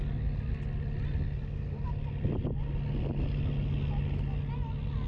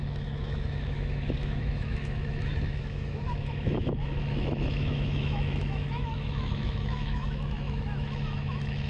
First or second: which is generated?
second